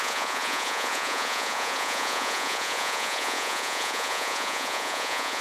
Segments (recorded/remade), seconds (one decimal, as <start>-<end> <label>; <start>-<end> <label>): 0.0-5.4 remade